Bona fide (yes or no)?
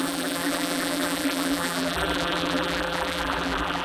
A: no